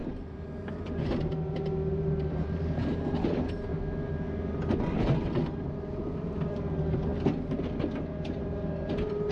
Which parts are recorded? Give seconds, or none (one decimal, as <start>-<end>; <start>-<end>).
3.7-5.6